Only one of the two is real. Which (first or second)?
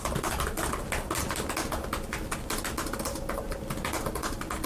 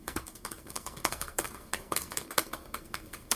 first